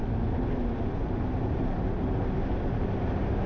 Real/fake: real